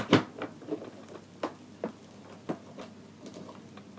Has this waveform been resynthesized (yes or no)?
no